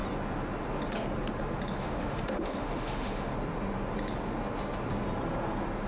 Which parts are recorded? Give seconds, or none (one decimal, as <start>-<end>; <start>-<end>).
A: 0.0-1.8; 3.3-5.9